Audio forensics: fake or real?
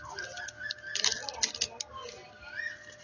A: real